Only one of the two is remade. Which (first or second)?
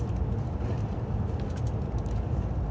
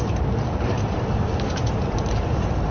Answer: second